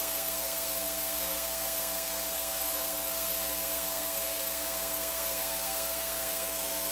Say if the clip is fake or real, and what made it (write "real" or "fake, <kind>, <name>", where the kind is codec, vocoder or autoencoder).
fake, codec, SNAC